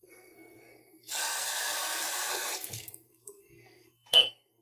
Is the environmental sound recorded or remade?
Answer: remade